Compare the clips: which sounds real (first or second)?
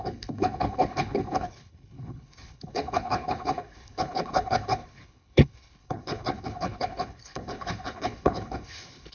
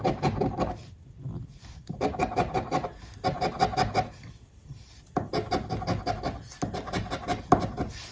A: second